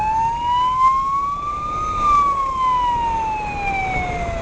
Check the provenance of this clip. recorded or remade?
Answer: recorded